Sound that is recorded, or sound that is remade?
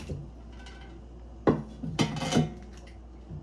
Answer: recorded